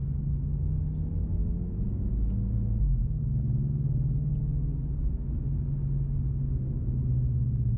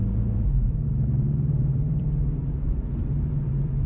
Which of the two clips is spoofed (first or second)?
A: second